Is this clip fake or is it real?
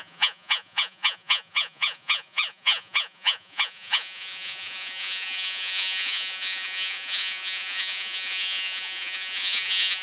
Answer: fake